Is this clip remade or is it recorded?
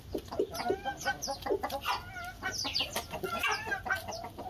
recorded